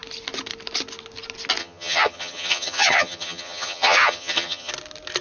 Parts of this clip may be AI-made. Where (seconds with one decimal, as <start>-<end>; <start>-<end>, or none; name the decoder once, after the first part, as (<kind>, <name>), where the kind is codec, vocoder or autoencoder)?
1.6-4.7 (vocoder, HiFi-GAN)